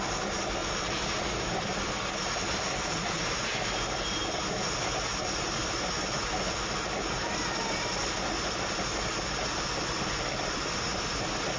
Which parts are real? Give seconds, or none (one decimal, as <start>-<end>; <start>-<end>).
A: 0.0-11.6